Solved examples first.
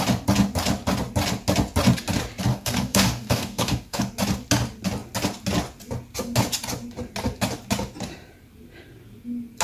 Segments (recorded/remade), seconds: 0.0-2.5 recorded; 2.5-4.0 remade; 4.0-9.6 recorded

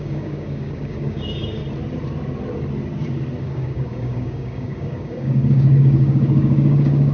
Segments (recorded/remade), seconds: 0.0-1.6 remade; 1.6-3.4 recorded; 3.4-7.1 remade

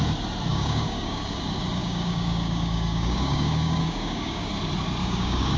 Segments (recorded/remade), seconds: 0.0-0.5 recorded; 0.5-1.4 remade; 1.4-1.8 recorded; 1.8-4.5 remade; 4.5-5.0 recorded; 5.0-5.6 remade

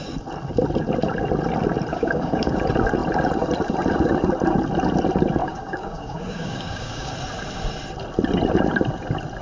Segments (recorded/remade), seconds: 0.0-1.9 recorded; 1.9-2.6 remade; 2.6-5.4 recorded; 5.4-7.1 remade; 7.1-9.4 recorded